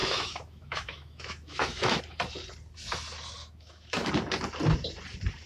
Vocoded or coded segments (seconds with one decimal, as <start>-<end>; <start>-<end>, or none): 0.0-2.0; 3.4-4.1